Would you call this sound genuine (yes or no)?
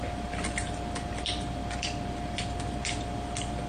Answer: no